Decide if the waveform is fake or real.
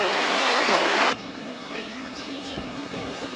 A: fake